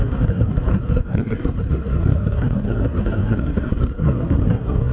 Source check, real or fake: fake